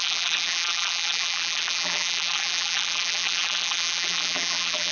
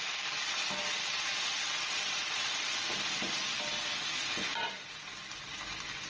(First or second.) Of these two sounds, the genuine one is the second